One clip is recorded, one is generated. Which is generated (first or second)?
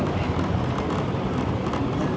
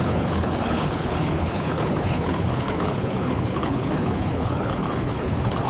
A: second